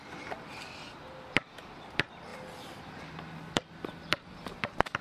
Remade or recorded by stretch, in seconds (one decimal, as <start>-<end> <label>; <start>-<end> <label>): 0.0-5.0 recorded